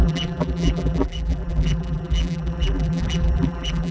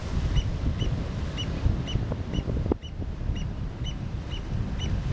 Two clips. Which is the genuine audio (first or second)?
second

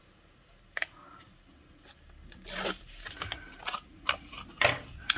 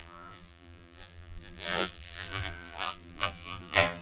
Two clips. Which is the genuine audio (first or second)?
first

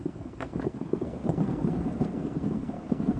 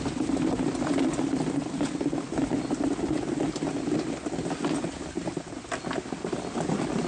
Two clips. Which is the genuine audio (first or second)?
second